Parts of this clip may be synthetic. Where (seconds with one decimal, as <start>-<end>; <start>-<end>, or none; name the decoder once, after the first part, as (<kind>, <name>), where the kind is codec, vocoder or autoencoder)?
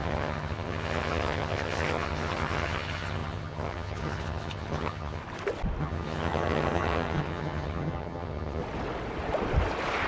0.0-5.2 (vocoder, HiFi-GAN); 5.8-8.6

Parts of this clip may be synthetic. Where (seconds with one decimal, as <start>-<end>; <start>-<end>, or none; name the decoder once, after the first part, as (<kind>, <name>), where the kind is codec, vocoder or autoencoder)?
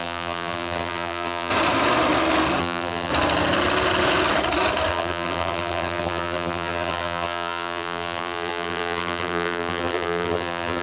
0.0-1.5 (vocoder, BigVGAN v2); 2.6-3.1; 4.9-10.8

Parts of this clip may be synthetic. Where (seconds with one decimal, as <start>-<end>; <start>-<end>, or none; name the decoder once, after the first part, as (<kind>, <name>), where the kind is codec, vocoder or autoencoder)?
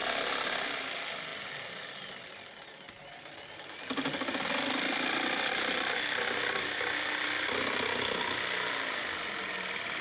none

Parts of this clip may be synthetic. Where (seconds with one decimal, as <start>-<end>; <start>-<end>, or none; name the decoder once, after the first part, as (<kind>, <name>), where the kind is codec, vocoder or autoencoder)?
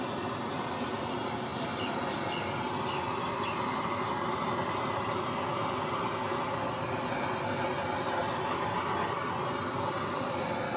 none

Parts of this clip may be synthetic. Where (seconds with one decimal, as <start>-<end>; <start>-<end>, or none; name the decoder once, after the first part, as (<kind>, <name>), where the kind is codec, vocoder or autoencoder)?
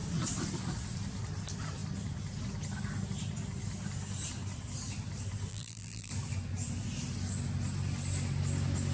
5.5-6.1 (vocoder, BigVGAN v2)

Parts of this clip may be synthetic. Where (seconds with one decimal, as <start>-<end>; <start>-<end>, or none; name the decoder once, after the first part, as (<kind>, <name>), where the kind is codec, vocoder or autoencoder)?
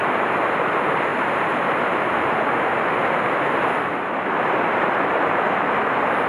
none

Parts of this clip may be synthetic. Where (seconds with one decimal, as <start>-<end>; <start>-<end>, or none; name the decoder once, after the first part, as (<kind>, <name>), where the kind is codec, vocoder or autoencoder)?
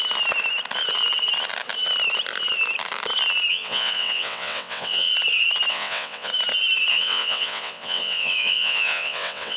3.5-5.1 (vocoder, WaveNeXt); 5.7-6.3; 6.9-9.6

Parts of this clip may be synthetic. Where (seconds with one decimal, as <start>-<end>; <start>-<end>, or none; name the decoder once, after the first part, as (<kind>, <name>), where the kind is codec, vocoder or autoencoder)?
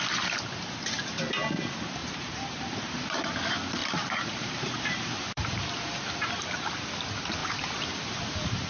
2.0-3.3 (vocoder, BigVGAN v2); 3.8-6.9; 7.4-8.7